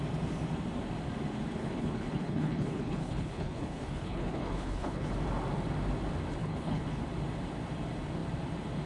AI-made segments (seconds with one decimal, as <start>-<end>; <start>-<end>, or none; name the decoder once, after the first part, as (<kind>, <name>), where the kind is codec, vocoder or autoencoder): 1.6-5.1 (codec, HILCodec); 6.4-7.0